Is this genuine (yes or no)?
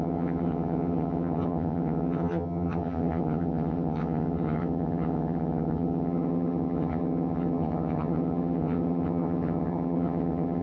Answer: no